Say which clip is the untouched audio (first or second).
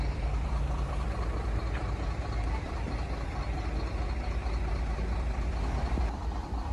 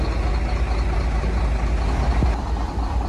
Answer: second